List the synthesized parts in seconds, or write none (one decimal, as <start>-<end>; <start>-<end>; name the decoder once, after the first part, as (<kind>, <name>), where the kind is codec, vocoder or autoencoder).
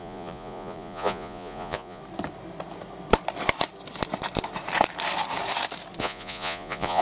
0.0-2.0 (vocoder, Vocos); 6.0-7.0